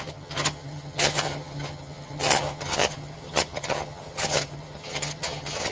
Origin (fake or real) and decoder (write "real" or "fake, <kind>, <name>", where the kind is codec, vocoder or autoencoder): fake, vocoder, HiFi-GAN